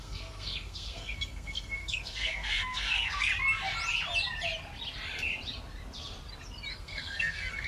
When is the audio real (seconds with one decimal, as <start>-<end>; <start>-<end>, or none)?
3.3-6.7